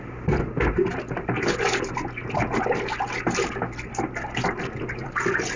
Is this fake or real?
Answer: real